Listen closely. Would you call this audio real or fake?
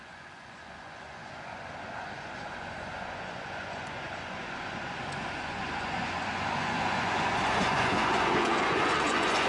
fake